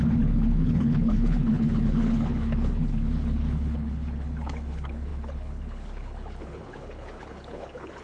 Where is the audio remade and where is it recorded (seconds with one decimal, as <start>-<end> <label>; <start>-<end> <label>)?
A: 0.0-8.0 remade